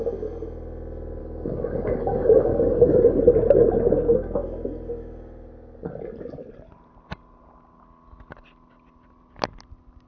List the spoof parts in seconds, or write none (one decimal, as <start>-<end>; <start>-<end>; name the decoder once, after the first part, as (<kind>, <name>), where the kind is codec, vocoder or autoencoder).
1.2-3.2 (codec, DAC)